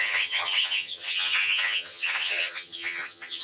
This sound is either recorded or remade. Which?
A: remade